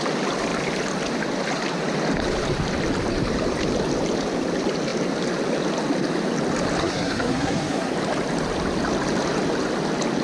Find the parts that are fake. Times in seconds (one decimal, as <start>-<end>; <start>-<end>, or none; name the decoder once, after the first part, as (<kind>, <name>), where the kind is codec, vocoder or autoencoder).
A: 6.8-7.9 (codec, SNAC)